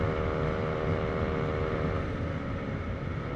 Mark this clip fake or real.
real